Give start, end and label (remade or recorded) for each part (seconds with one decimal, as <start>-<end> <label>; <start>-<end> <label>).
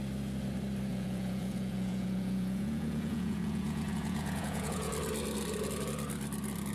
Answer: 0.0-0.9 recorded; 0.9-4.9 remade; 4.9-6.7 recorded